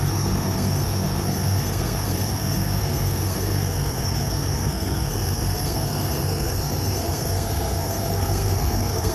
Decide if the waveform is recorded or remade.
remade